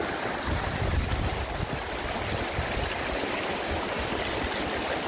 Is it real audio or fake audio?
real